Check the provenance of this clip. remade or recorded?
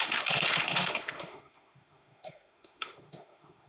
remade